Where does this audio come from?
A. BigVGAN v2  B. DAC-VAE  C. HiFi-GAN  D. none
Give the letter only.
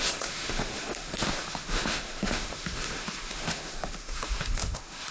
B